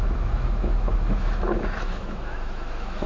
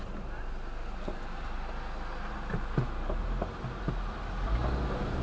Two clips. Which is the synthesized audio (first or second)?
first